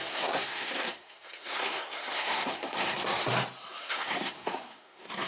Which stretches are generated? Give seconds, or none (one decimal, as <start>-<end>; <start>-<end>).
0.0-3.3; 3.8-5.3